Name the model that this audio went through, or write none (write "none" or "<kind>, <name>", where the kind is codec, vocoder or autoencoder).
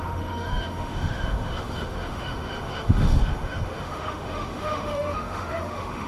autoencoder, DAC-VAE